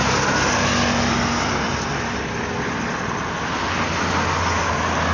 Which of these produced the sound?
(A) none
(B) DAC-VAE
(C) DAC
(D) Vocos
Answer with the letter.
A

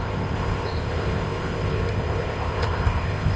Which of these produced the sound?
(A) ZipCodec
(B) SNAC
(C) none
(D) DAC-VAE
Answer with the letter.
A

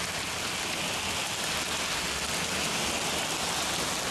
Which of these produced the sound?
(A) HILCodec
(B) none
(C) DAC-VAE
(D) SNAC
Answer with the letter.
B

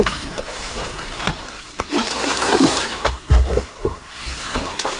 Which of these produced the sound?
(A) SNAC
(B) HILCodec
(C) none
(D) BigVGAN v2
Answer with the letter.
A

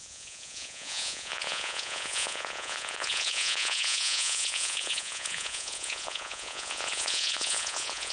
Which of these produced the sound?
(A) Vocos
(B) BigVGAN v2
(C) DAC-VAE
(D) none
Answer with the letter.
A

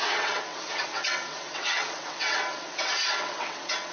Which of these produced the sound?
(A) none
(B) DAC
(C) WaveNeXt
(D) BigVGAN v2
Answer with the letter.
C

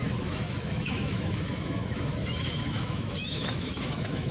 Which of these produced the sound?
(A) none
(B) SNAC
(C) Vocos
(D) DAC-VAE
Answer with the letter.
D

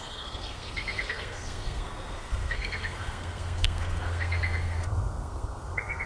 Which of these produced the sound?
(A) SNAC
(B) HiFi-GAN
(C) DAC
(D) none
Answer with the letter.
A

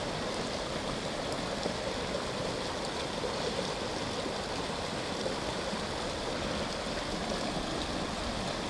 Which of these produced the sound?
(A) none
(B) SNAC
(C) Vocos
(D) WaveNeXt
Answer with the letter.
A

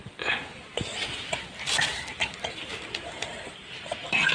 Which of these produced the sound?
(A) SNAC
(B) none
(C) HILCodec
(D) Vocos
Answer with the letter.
B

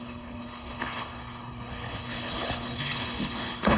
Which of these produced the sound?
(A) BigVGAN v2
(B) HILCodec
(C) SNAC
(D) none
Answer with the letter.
B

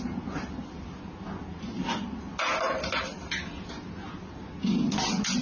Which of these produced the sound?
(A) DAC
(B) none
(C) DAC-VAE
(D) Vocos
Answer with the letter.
B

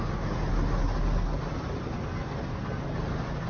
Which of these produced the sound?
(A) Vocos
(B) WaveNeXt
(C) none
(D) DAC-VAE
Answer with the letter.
C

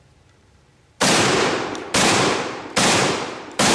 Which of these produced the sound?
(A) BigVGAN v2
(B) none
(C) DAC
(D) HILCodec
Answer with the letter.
A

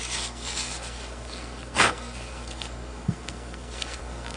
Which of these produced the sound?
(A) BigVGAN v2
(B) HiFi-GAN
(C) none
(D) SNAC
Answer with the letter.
D